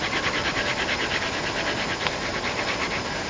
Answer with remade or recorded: recorded